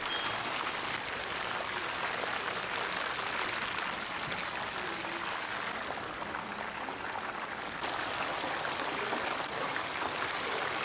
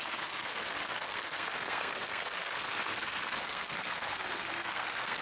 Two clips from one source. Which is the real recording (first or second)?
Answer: first